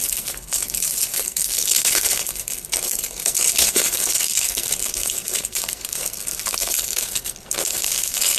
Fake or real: fake